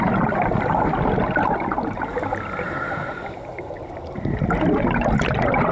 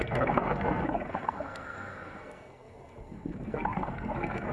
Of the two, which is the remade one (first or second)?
second